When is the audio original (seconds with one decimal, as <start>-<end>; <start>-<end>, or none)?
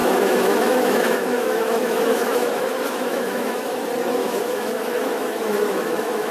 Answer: 3.8-4.2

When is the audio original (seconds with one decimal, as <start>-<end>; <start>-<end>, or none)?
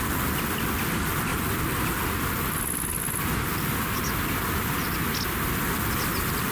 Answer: 0.0-6.5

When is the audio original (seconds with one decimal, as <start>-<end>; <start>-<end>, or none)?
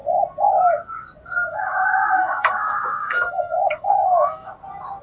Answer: 0.0-1.5; 4.5-5.0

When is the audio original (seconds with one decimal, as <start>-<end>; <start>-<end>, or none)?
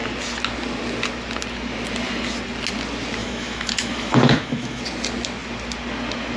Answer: 0.0-3.2; 4.8-6.4